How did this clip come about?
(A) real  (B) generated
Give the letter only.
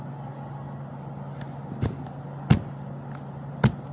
A